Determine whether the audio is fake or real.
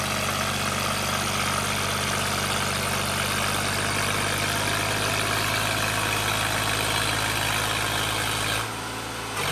real